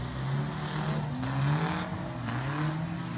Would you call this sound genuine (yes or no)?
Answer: yes